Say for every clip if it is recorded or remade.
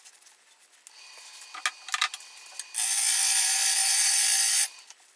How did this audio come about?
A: recorded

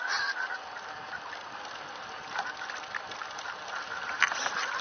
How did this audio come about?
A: recorded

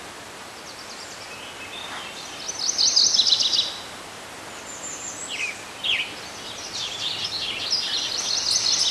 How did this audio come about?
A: recorded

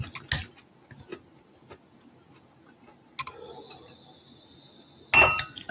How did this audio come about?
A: recorded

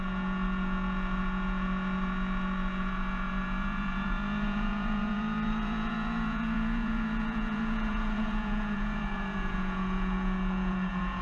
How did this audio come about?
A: remade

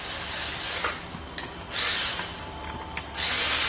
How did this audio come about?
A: recorded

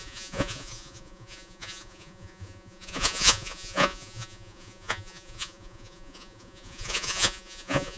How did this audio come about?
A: remade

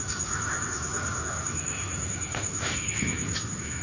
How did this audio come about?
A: remade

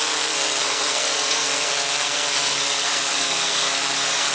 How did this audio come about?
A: remade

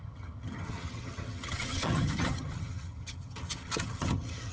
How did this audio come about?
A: remade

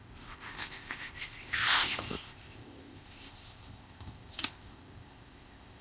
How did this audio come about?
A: remade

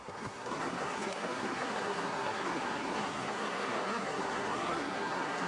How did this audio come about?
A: remade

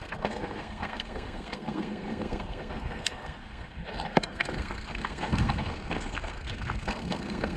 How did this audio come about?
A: remade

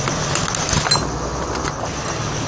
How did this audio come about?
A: recorded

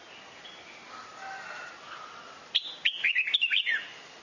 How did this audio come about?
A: recorded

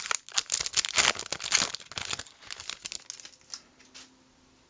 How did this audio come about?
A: recorded